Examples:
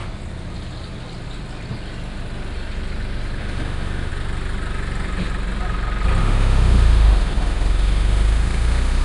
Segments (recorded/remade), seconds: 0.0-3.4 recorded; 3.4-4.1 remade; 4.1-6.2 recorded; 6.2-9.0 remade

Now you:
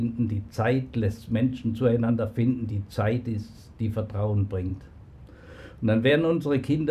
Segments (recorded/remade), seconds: 0.0-6.9 recorded

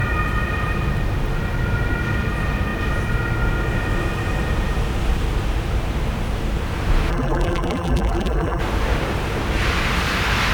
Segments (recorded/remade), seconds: 0.0-7.1 recorded; 7.1-8.6 remade; 8.6-10.5 recorded

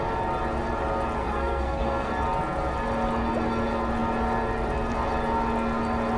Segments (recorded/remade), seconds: 0.0-1.2 recorded; 1.2-2.1 remade; 2.1-6.2 recorded

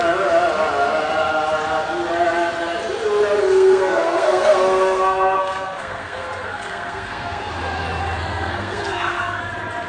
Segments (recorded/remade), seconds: 0.0-3.4 recorded; 3.4-7.5 remade; 7.5-8.2 recorded; 8.2-9.4 remade; 9.4-9.9 recorded

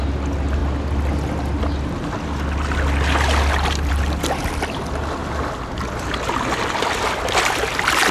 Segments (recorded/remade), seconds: 0.0-8.1 recorded

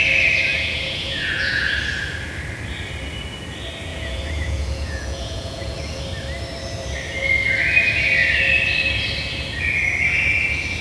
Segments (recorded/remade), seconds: 0.0-0.5 recorded; 0.5-1.7 remade; 1.7-3.9 recorded; 3.9-6.0 remade; 6.0-10.8 recorded